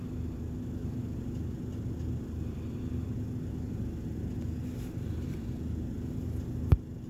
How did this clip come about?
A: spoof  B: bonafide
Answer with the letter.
B